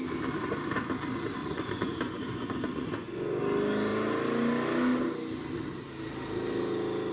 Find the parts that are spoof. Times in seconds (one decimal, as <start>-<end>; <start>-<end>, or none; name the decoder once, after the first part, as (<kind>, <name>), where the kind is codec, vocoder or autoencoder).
1.4-3.4 (vocoder, Vocos)